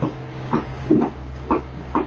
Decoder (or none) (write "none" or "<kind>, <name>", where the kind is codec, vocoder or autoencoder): codec, DAC